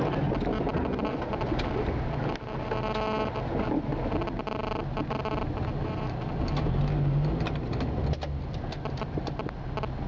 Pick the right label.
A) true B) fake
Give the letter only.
A